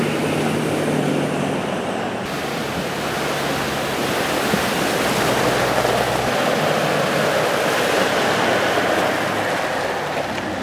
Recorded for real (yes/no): yes